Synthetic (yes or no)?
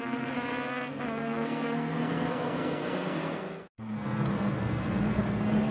yes